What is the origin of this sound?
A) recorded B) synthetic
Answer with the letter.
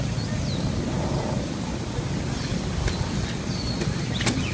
A